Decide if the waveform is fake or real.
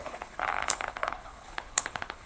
fake